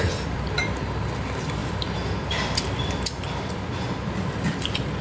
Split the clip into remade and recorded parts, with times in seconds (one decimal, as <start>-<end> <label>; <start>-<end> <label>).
0.0-5.0 remade